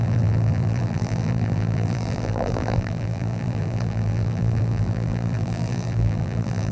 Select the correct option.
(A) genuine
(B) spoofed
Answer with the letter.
B